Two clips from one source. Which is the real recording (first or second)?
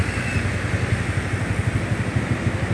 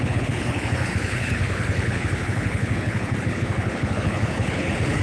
first